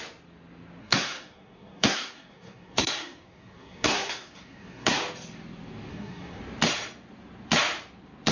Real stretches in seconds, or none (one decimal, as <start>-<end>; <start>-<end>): 0.0-0.8; 5.0-5.9; 6.4-8.3